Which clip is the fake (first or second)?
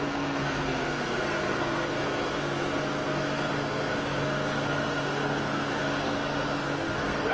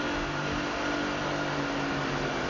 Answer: first